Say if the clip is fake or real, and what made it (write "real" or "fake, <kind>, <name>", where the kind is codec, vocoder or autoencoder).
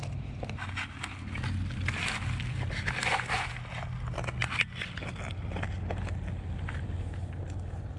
real